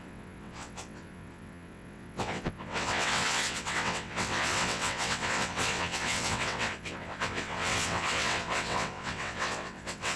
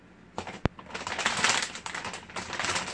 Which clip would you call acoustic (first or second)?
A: second